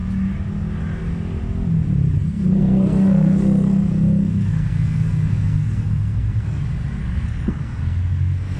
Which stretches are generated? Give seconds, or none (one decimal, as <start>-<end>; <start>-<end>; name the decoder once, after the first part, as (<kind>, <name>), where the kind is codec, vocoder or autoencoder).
2.2-6.6 (codec, SNAC); 7.0-8.6